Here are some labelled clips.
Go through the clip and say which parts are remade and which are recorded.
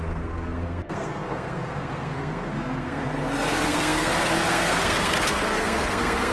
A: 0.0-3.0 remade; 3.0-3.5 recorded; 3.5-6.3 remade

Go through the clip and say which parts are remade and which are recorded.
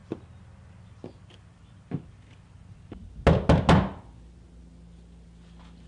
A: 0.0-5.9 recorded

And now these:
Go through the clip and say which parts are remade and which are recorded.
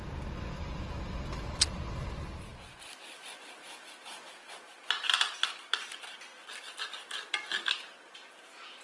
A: 0.0-8.8 recorded